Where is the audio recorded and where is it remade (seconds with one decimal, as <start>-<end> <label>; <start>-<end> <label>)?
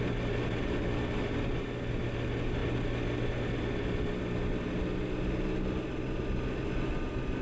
0.0-7.4 recorded